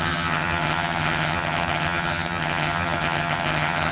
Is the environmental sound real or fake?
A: fake